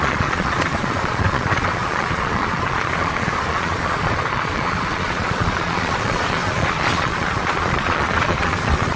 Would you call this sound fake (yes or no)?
yes